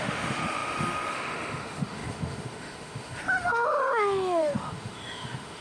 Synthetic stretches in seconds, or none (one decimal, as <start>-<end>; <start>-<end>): 0.0-5.6